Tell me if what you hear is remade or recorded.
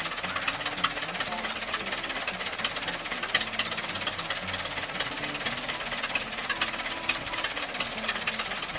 recorded